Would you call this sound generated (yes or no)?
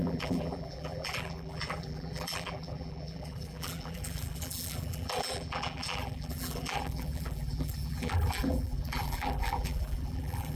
yes